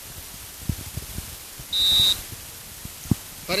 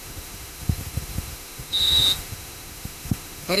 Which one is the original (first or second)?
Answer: first